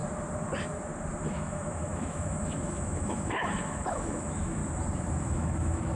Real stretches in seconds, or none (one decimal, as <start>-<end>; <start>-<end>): 0.0-1.2; 4.6-5.2

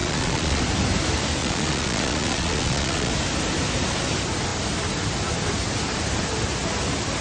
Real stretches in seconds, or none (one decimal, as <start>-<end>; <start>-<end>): 0.6-1.4; 3.1-7.2

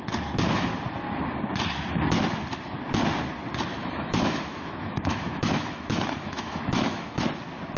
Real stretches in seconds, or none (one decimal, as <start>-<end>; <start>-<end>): 0.0-3.8; 7.2-7.8

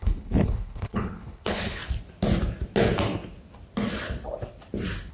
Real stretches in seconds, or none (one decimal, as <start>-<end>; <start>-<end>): 1.8-5.1

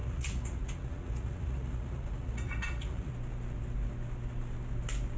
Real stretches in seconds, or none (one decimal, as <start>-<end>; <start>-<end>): 3.1-5.2

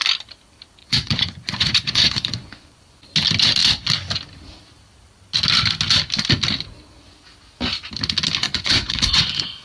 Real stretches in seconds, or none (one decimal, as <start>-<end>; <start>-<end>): 0.0-0.8; 3.0-8.4

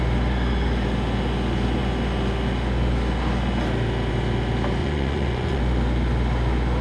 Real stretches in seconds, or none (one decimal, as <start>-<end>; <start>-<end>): 0.0-4.8; 5.6-6.8

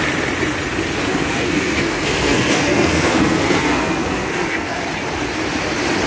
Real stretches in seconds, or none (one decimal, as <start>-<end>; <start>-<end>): 0.0-1.1; 4.8-6.1